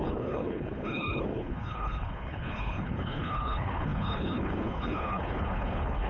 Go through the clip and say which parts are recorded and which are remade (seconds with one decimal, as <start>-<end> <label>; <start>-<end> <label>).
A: 0.0-6.1 remade